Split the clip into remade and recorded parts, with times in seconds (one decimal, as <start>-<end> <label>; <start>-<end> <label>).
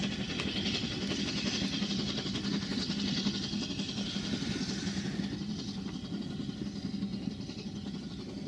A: 0.0-8.5 recorded